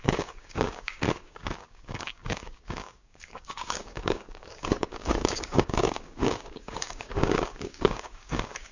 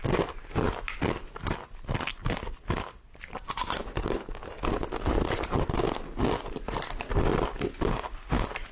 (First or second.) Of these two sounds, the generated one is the first